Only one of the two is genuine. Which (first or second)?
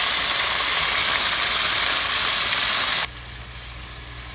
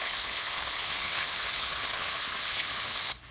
first